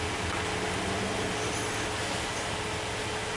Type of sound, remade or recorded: recorded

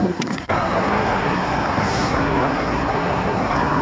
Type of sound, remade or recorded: remade